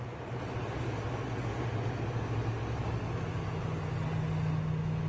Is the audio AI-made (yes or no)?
no